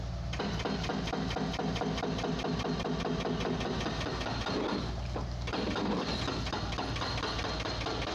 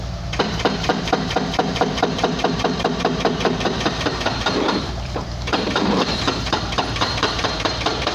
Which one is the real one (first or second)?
first